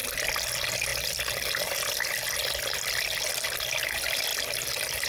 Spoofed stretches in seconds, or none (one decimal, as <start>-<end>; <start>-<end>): none